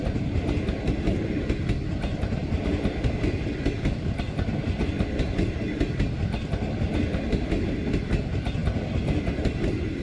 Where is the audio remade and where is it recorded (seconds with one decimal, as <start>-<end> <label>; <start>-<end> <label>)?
0.0-10.0 recorded